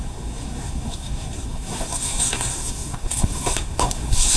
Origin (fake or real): fake